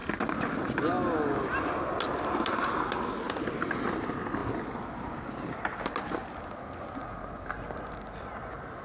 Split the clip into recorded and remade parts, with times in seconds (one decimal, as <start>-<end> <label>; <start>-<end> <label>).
0.0-8.8 recorded